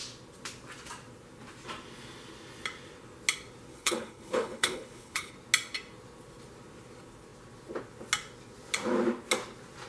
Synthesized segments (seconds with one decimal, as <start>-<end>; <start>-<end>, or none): 3.7-5.3